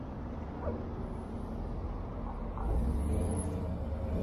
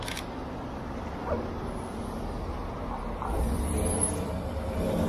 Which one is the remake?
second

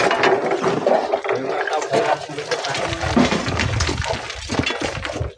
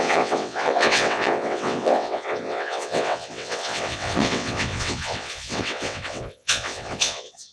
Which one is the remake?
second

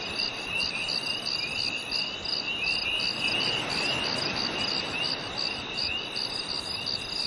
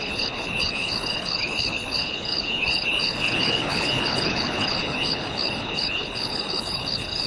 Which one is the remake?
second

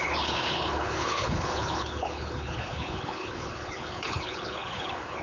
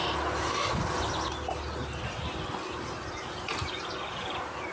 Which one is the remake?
first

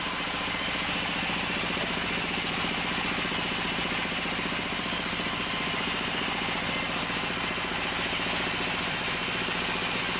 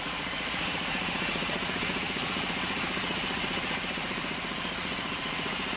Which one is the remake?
second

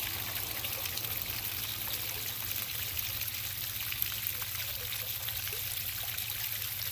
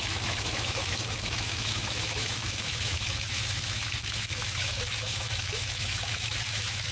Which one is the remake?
second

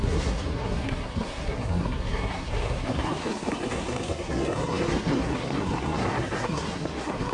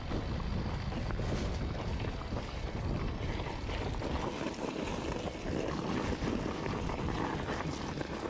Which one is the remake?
first